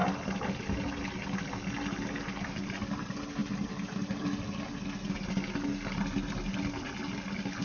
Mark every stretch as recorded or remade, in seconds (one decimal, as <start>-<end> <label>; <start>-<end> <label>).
0.0-7.6 recorded

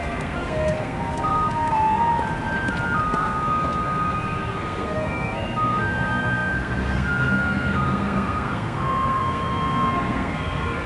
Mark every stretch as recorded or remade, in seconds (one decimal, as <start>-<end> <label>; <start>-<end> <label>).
0.0-2.1 remade; 2.1-3.0 recorded; 3.0-10.9 remade

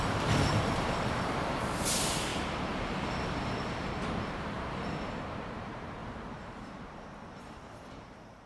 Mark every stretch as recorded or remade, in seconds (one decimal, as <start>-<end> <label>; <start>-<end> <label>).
0.0-2.3 remade; 2.3-4.1 recorded; 4.1-8.5 remade

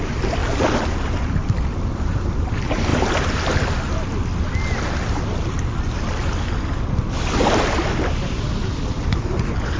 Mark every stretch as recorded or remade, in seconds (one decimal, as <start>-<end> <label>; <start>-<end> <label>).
0.0-2.9 remade; 2.9-8.2 recorded; 8.2-9.8 remade

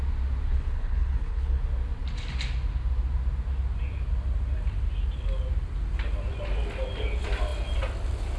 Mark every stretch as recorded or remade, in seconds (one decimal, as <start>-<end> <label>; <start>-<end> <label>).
0.0-0.5 recorded; 0.5-1.6 remade; 1.6-8.4 recorded

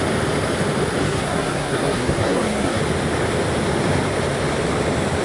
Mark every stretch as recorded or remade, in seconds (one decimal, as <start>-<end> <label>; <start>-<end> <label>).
0.0-1.0 recorded; 1.0-2.8 remade; 2.8-5.2 recorded

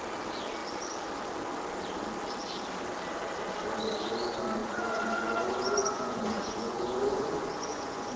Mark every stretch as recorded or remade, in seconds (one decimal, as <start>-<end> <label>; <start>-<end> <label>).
0.0-4.6 recorded; 4.6-8.2 remade